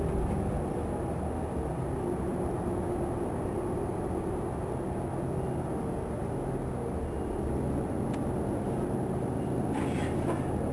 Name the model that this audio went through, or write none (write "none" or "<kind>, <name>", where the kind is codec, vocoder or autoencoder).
none